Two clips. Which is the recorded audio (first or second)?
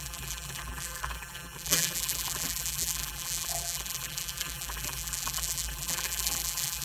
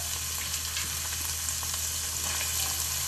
second